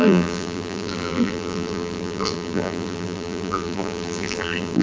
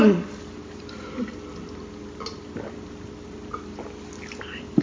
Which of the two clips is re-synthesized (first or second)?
first